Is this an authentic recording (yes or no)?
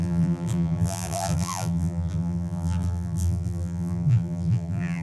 no